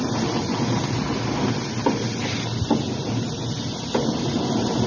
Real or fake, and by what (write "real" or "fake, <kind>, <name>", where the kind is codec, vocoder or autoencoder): real